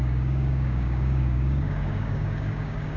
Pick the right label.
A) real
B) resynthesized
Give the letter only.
B